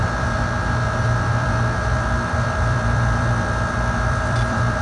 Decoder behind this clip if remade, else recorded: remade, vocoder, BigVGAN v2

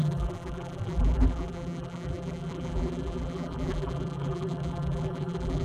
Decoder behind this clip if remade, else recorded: remade, vocoder, BigVGAN v2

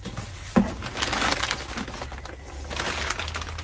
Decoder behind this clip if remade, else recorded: recorded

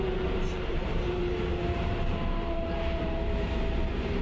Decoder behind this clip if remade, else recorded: remade, vocoder, BigVGAN v2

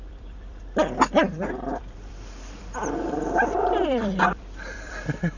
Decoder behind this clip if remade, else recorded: remade, vocoder, BigVGAN v2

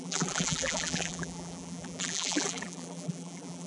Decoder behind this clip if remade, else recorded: remade, vocoder, BigVGAN v2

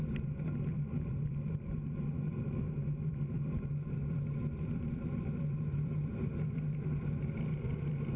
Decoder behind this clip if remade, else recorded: remade, vocoder, BigVGAN v2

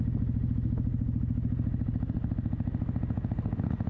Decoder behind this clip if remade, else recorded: recorded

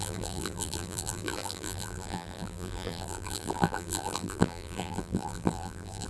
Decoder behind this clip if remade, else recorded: remade, vocoder, BigVGAN v2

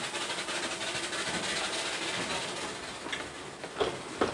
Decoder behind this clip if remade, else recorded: recorded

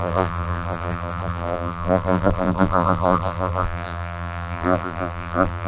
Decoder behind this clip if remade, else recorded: remade, vocoder, BigVGAN v2